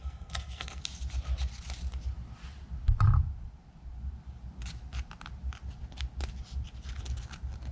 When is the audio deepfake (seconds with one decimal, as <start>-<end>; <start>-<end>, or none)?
0.0-0.8